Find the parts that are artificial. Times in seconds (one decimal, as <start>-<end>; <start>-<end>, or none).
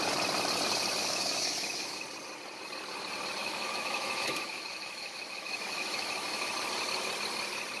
1.0-2.0; 3.4-6.5